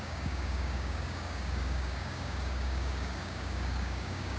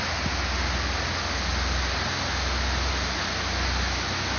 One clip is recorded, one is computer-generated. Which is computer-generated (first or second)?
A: first